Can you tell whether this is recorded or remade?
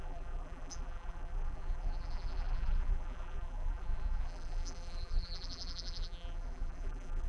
remade